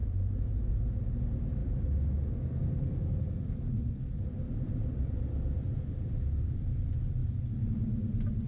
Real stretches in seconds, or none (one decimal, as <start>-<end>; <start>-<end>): 1.0-8.5